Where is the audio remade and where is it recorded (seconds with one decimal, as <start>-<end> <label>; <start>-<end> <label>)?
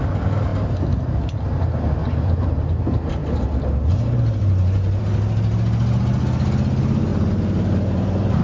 0.0-2.0 recorded; 2.0-2.6 remade; 2.6-3.2 recorded; 3.2-5.0 remade; 5.0-7.1 recorded; 7.1-8.4 remade